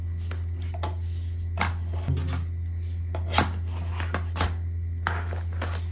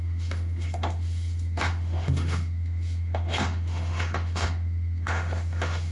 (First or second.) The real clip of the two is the first